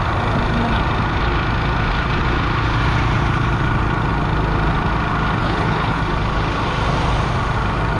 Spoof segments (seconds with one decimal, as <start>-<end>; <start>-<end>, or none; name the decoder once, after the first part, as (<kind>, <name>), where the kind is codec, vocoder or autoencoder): 5.4-6.0 (codec, HILCodec)